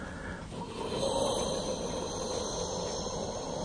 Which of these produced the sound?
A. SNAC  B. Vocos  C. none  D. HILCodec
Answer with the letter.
C